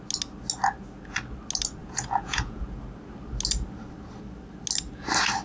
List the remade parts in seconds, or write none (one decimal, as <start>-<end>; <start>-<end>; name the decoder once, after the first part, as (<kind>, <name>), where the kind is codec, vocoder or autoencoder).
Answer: 1.8-2.7 (vocoder, Vocos)

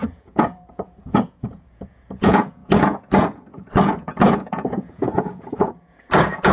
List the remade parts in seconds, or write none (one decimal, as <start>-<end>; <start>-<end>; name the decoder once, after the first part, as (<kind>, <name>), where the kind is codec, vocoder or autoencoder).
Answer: 0.0-6.5 (vocoder, Vocos)

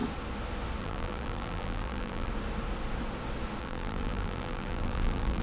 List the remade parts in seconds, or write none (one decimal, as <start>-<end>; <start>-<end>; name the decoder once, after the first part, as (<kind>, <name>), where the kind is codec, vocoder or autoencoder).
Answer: 0.8-2.3 (vocoder, BigVGAN v2); 3.6-5.4

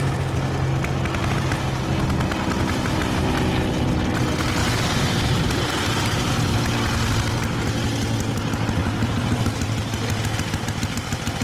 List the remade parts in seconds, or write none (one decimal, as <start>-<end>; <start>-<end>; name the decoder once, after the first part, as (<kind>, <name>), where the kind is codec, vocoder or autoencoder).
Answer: 4.6-6.3 (vocoder, BigVGAN v2); 8.8-9.9

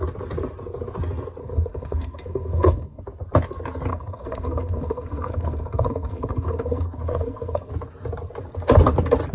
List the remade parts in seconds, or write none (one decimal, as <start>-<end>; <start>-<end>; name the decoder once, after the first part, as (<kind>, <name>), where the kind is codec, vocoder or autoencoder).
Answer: 1.4-3.0 (codec, SNAC); 3.9-7.7

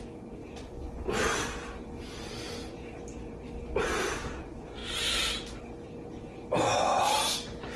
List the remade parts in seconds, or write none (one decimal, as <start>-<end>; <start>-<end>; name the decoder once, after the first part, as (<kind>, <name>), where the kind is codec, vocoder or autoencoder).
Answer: 0.4-1.3 (vocoder, Vocos)